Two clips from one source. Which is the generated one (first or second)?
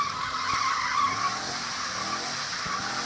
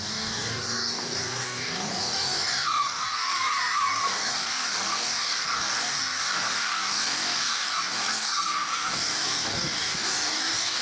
second